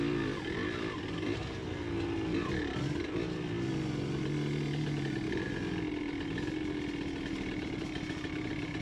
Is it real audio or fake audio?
real